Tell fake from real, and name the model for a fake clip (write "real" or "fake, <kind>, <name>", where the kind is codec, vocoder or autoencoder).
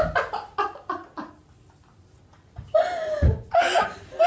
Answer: real